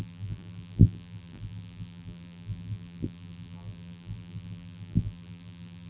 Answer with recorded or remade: remade